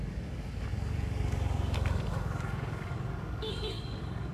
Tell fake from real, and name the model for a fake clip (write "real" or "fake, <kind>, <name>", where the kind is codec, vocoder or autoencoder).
fake, codec, DAC